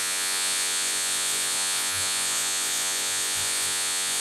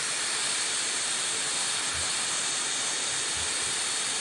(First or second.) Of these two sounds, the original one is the second